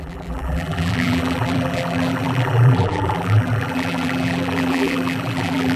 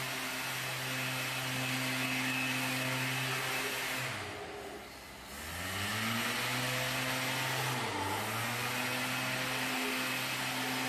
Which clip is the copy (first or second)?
first